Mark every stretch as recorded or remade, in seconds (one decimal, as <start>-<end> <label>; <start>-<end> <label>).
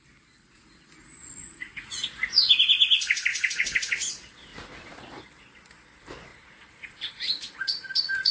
0.0-1.2 recorded; 1.2-2.5 remade; 2.5-3.3 recorded; 3.3-4.1 remade; 4.1-4.5 recorded; 4.5-5.1 remade; 5.1-6.3 recorded; 6.3-8.3 remade